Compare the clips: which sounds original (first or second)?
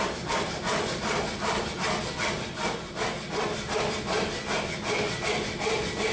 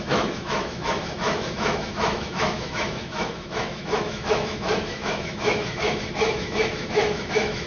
first